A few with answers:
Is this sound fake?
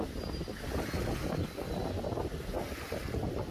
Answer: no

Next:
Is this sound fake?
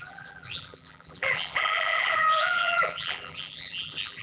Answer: yes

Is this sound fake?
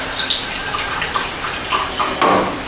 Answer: no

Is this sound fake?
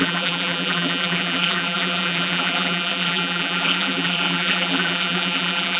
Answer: yes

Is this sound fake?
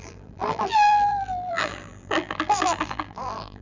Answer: yes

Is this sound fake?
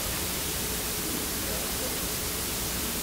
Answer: yes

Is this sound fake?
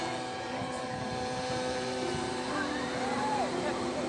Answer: yes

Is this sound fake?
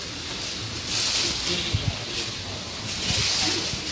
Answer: no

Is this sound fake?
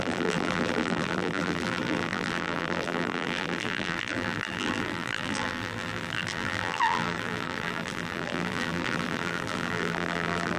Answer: yes